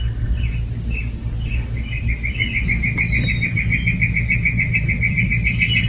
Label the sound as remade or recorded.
recorded